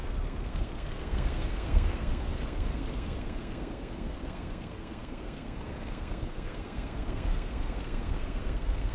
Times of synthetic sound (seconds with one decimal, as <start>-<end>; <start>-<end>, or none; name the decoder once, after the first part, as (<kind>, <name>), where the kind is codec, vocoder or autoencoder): 0.0-8.9 (codec, SNAC)